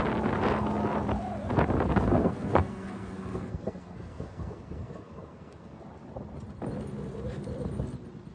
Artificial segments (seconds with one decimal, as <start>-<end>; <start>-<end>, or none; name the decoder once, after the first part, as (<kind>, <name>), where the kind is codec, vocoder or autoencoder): 1.9-5.8 (codec, SNAC)